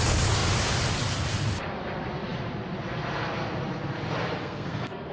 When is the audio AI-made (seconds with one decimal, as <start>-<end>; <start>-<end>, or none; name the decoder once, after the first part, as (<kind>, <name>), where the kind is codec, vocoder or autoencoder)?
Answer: 4.4-5.1 (codec, SNAC)